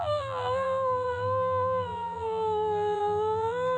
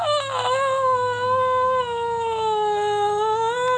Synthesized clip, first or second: first